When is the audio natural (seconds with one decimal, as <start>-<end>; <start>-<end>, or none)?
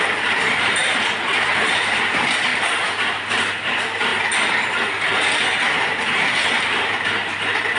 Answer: 2.5-3.3; 4.1-6.6